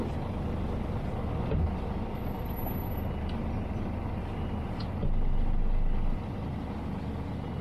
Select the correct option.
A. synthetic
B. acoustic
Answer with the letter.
B